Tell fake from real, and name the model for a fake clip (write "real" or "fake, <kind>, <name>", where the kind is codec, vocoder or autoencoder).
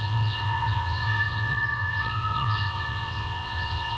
fake, vocoder, WaveNeXt